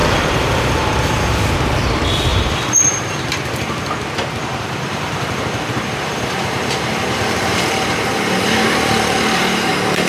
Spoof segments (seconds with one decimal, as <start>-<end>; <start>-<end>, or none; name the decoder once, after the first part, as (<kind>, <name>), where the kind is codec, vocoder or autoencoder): 0.0-1.5 (vocoder, BigVGAN v2); 2.3-3.9; 4.5-9.7